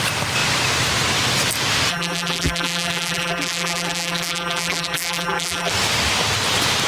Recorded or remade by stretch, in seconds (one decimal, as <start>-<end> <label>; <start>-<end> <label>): 0.0-1.9 recorded; 1.9-5.7 remade; 5.7-6.9 recorded